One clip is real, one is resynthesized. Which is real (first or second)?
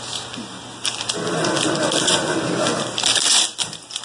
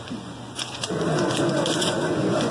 first